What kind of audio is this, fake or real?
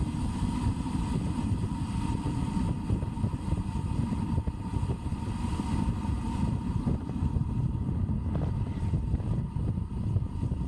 real